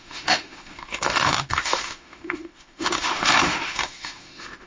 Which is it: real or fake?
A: fake